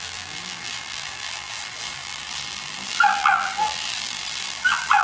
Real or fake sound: fake